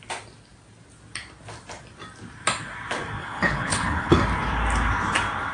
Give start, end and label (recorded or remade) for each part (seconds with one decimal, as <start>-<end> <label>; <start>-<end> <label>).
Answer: 0.0-3.2 recorded; 3.2-4.2 remade; 4.2-5.5 recorded